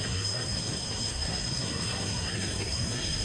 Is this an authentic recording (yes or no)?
no